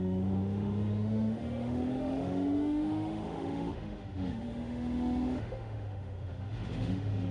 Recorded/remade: remade